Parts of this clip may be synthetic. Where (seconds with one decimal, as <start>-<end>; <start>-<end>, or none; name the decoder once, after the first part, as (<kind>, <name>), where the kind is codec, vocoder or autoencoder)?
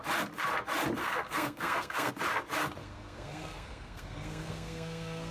1.0-2.1 (codec, SNAC); 2.8-5.3